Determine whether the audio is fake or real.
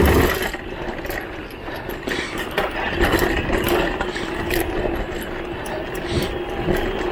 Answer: real